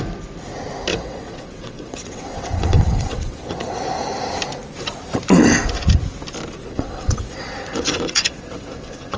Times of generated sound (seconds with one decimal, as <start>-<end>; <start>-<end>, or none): 0.9-3.8; 6.6-9.2